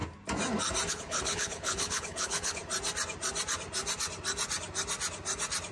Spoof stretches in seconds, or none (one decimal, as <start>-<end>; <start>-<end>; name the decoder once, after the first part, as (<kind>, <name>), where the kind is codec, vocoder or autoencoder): 0.9-2.6 (codec, HILCodec)